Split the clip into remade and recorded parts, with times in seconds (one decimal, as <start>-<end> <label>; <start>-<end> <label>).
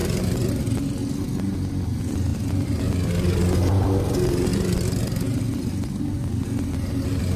0.0-0.6 remade; 0.6-2.3 recorded; 2.3-2.8 remade; 2.8-4.5 recorded; 4.5-6.0 remade; 6.0-7.4 recorded